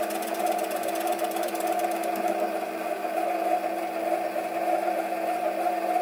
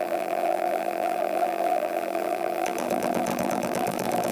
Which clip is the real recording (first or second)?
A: first